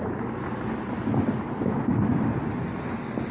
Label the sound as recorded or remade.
recorded